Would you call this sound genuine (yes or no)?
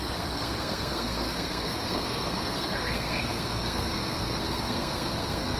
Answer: no